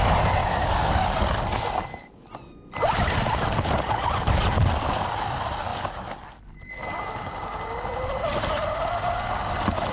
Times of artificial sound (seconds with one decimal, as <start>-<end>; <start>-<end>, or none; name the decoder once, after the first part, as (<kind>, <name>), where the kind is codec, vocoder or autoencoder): 0.4-0.9 (codec, DAC)

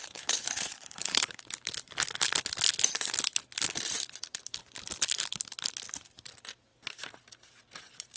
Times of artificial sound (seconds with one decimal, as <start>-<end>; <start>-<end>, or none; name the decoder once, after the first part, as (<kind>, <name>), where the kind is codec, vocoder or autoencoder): 0.0-1.4 (codec, HILCodec)

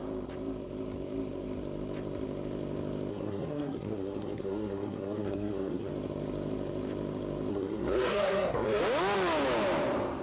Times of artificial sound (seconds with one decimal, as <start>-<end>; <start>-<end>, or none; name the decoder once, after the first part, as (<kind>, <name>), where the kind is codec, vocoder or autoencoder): 3.1-5.9 (codec, SNAC); 7.5-8.8

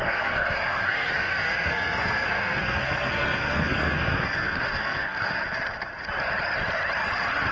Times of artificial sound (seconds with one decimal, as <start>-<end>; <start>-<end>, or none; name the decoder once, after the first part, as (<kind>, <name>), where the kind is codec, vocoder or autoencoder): 0.0-5.4 (codec, SNAC)

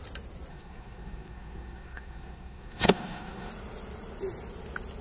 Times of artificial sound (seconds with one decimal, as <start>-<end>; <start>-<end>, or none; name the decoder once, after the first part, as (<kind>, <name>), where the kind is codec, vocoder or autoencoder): 0.5-3.5 (codec, SNAC)

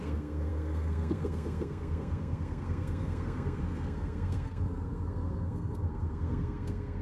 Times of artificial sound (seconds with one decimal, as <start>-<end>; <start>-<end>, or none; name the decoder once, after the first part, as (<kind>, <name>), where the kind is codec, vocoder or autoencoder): 0.0-7.0 (codec, SNAC)